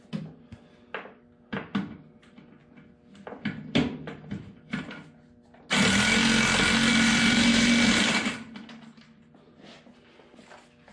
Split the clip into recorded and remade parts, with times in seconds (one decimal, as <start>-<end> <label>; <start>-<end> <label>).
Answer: 0.0-6.9 recorded; 6.9-8.3 remade; 8.3-10.9 recorded